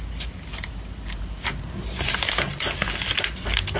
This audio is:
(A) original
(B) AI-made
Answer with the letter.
A